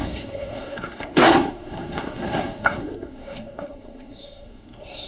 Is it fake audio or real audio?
fake